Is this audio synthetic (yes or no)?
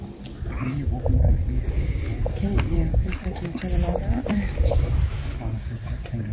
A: no